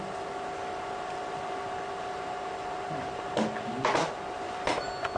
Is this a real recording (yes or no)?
yes